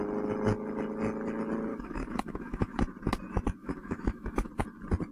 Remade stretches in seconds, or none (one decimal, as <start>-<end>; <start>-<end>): 1.7-2.8; 3.6-4.5